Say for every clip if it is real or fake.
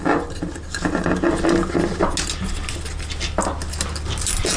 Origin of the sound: real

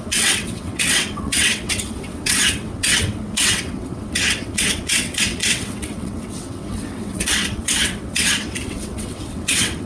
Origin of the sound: fake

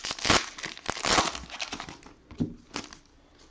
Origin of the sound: real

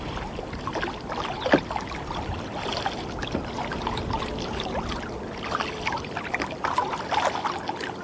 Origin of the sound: real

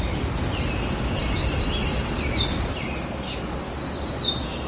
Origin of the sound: real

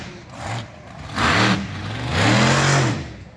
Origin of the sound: real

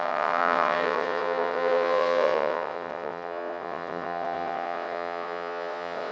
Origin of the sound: fake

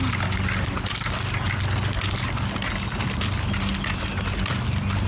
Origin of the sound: real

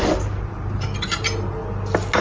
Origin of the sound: real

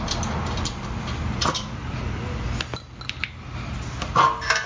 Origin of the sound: real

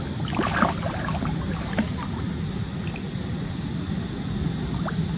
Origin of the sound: real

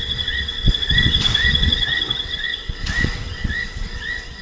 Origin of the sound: fake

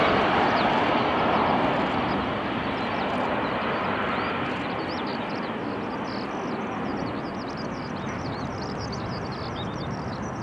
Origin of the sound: real